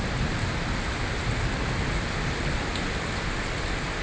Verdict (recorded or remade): recorded